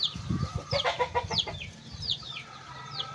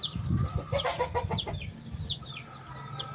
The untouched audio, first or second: second